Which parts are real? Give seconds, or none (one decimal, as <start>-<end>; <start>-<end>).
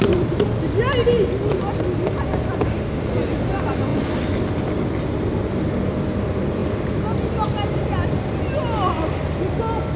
0.0-10.0